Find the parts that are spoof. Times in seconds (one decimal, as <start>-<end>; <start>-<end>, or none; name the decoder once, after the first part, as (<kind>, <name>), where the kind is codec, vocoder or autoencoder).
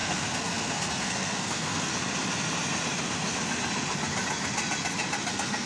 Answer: 0.0-1.9 (codec, SNAC); 5.3-5.7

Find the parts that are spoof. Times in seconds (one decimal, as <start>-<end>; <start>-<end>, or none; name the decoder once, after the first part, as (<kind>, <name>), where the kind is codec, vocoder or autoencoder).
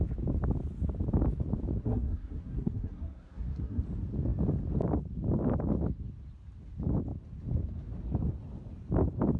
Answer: 1.8-3.8 (codec, SNAC)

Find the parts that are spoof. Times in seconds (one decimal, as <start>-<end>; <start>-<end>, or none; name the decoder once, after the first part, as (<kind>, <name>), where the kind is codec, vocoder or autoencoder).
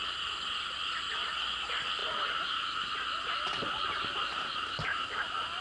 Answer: none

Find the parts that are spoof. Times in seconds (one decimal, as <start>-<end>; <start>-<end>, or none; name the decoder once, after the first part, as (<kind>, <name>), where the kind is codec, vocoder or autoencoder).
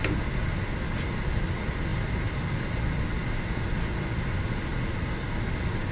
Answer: none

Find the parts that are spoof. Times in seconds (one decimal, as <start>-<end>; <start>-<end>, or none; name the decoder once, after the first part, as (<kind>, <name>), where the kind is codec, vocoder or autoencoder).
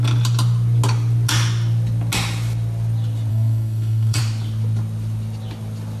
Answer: 3.3-4.2 (codec, SNAC)